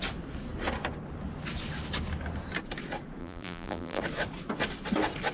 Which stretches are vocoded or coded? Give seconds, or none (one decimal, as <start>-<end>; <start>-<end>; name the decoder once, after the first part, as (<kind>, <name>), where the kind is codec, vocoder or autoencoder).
3.2-4.0 (vocoder, BigVGAN v2)